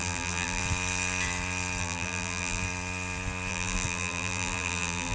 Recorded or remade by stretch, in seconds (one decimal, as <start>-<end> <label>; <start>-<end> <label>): 0.0-0.6 remade; 0.6-1.8 recorded; 1.8-2.6 remade; 2.6-3.5 recorded; 3.5-5.1 remade